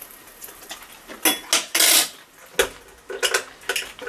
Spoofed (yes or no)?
no